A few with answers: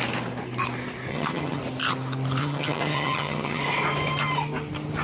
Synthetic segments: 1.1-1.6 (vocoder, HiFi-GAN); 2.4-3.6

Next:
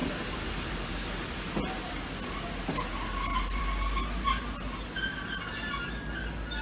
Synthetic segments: none

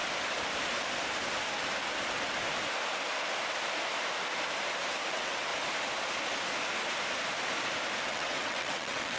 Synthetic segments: 5.1-5.5 (vocoder, WaveNeXt); 8.1-9.2

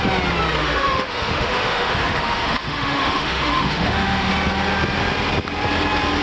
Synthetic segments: 0.6-4.3 (autoencoder, DAC-VAE)

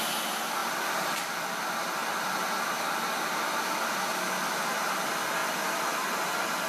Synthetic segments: 0.6-1.6 (vocoder, BigVGAN v2); 2.0-2.8; 5.4-6.0

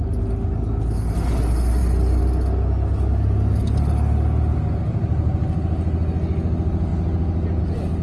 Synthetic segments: none

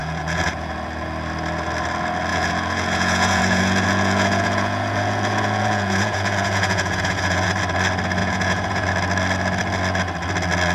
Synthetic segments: 0.0-0.7 (vocoder, Vocos); 2.3-7.5; 8.2-8.9